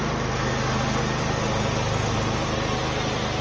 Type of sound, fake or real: real